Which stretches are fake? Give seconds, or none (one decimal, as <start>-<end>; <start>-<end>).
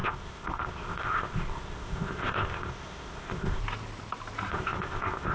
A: 0.0-3.6; 4.5-5.3